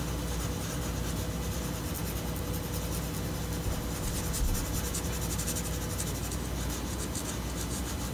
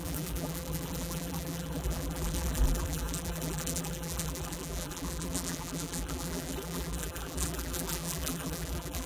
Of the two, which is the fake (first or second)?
second